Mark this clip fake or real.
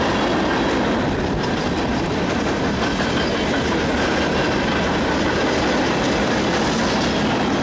real